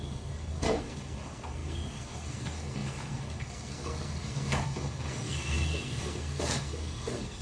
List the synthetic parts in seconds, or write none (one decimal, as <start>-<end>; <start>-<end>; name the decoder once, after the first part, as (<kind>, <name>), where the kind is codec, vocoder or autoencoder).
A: 0.0-7.4 (codec, SNAC)